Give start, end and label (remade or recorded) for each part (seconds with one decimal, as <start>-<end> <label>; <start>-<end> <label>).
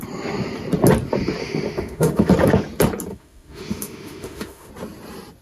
0.0-1.4 recorded; 1.4-2.3 remade; 2.3-3.1 recorded; 3.1-4.7 remade; 4.7-5.4 recorded